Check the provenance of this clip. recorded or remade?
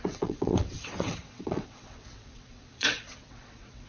remade